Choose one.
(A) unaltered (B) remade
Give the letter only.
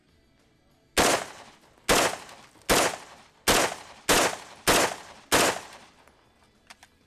A